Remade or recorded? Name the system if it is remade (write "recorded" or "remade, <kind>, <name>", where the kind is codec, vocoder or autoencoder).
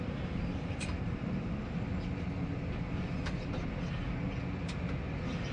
recorded